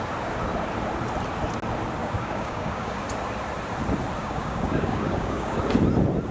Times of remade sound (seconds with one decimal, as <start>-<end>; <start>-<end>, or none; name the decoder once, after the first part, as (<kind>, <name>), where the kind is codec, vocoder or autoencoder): 2.0-3.0 (codec, DAC); 4.2-5.6